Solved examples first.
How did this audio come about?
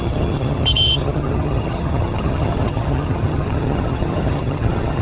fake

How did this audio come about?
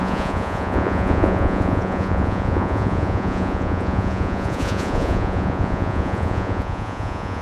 fake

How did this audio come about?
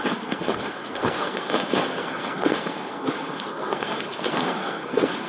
fake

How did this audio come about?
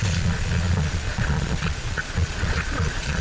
fake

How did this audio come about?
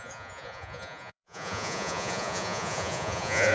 fake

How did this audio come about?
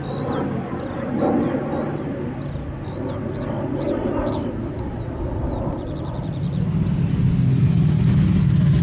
real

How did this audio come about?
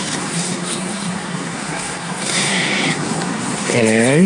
fake